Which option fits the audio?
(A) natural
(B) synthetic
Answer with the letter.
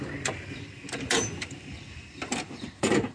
B